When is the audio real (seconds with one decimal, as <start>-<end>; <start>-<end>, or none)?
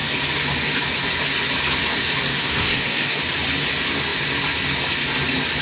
0.0-2.3; 3.2-5.6